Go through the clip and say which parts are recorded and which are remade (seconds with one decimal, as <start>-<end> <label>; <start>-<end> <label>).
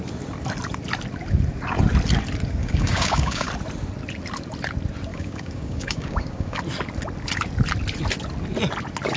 0.0-2.6 recorded; 2.6-3.5 remade; 3.5-5.1 recorded; 5.1-6.6 remade; 6.6-9.2 recorded